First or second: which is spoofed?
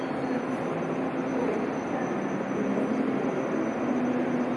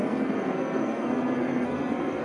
second